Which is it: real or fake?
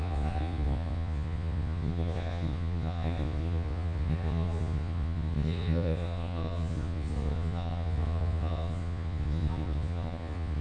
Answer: fake